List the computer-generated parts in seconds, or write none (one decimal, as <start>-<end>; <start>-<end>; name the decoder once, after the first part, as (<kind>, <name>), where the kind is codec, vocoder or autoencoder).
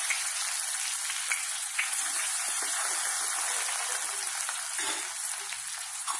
0.0-0.4 (vocoder, Vocos); 1.4-2.8; 5.8-6.2